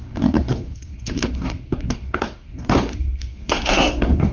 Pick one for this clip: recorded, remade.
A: remade